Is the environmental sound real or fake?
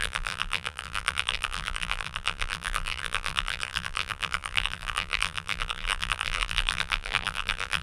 fake